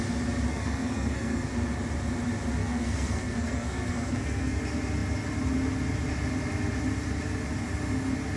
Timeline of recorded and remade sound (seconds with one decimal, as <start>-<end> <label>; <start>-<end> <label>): 0.0-0.5 recorded; 0.5-1.5 remade; 1.5-2.6 recorded; 2.6-4.6 remade; 4.6-8.4 recorded